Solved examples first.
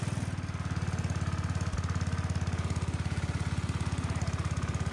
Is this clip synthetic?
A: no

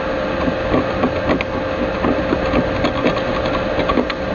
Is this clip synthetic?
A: no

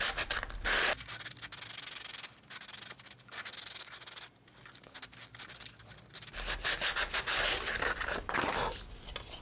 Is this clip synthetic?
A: no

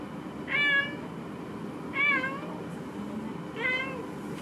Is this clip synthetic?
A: no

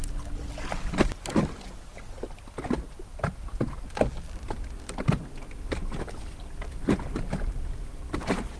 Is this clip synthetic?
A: no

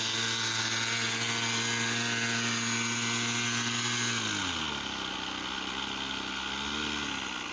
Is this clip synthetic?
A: no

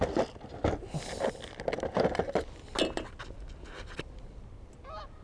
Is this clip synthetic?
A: no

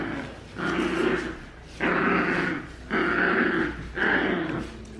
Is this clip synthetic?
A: no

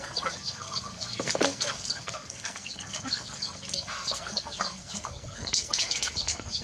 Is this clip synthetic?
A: yes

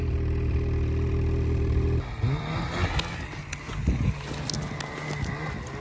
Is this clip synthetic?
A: no